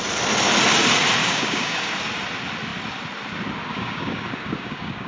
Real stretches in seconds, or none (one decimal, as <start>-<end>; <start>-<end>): 0.0-1.2; 1.9-3.7